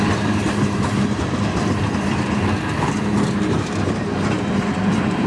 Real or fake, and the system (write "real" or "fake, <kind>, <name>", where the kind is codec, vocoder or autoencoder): real